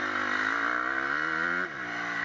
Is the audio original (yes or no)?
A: yes